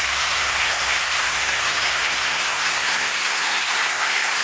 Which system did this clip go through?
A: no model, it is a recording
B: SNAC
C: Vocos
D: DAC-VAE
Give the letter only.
B